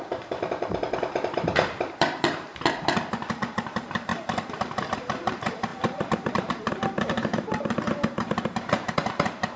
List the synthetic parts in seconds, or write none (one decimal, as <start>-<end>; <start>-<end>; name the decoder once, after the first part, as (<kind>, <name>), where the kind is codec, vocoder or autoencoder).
0.0-9.6 (vocoder, BigVGAN v2)